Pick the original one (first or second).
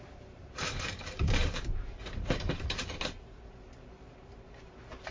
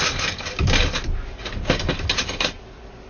second